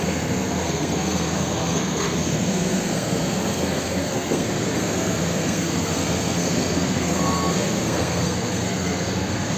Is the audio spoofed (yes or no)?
yes